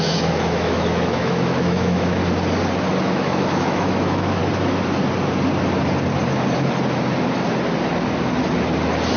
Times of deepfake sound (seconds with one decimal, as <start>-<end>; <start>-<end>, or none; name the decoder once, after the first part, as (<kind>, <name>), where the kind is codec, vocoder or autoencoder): 0.0-2.2 (autoencoder, DAC-VAE); 3.0-4.4